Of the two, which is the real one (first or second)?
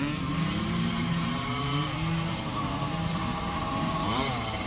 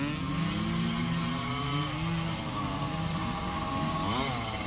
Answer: second